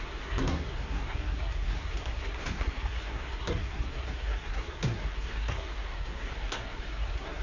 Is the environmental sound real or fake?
fake